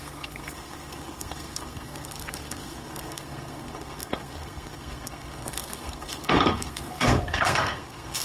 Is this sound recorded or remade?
remade